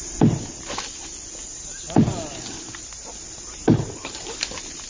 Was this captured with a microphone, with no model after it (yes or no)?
yes